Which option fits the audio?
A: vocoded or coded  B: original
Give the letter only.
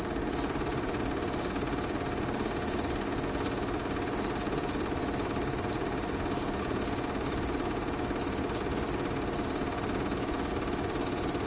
B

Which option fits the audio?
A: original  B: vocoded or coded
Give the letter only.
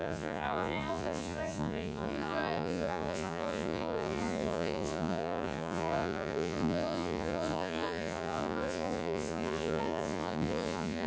B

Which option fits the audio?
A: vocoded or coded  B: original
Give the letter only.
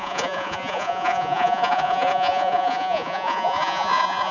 A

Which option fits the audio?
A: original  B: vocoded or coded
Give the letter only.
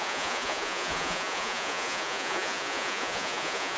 B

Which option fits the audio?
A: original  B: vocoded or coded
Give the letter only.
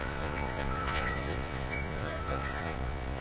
B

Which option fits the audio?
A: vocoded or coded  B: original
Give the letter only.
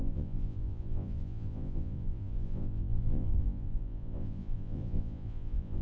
A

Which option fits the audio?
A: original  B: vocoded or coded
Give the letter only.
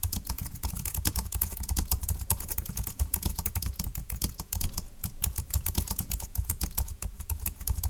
B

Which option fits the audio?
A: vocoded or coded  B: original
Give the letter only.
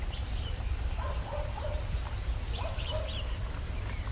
B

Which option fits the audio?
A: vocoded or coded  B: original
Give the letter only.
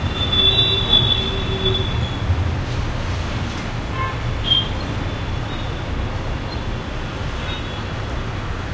B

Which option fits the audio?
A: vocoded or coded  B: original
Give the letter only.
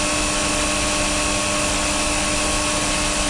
B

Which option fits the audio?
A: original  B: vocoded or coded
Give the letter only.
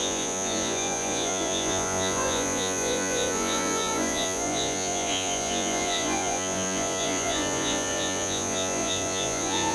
B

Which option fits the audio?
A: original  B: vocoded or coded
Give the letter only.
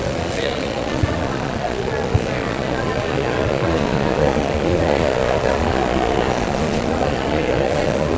B